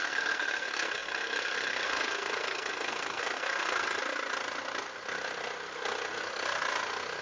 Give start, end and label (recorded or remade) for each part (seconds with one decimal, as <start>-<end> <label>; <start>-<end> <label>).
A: 0.0-4.0 remade; 4.0-7.2 recorded